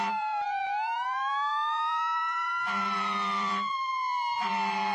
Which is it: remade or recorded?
remade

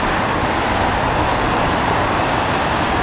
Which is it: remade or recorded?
recorded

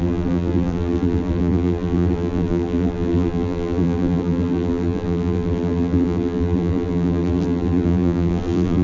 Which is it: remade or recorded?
remade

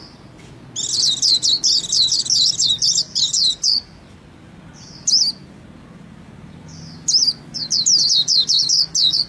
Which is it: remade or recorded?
recorded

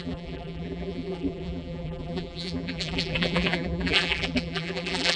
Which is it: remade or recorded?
remade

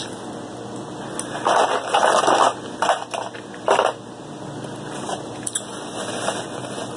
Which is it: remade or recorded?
recorded